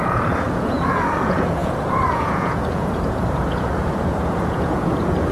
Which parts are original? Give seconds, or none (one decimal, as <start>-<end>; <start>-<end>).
none